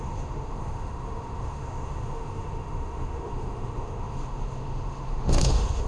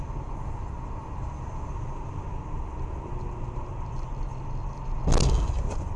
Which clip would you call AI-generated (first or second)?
first